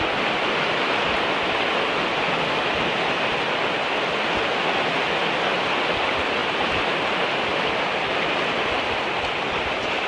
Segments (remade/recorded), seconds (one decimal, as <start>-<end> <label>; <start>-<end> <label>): 0.0-6.4 recorded; 6.4-7.6 remade; 7.6-10.1 recorded